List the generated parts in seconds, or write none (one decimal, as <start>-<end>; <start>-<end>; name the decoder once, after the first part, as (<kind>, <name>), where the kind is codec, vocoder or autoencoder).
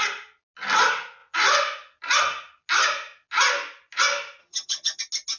4.4-5.0 (vocoder, HiFi-GAN)